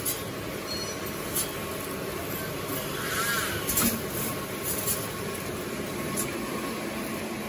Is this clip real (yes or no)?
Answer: yes